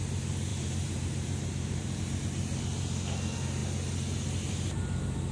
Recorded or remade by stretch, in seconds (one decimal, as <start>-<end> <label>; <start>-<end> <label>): 0.0-0.5 recorded; 0.5-2.0 remade; 2.0-5.3 recorded